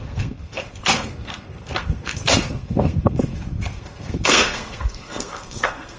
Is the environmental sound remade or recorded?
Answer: remade